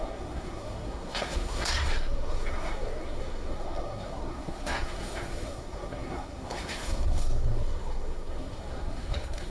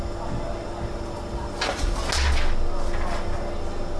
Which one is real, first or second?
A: second